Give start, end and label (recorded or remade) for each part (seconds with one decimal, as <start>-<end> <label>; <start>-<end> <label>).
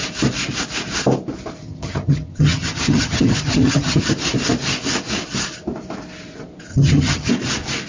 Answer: 0.0-1.6 recorded; 1.6-4.0 remade; 4.0-6.7 recorded; 6.7-7.3 remade; 7.3-7.9 recorded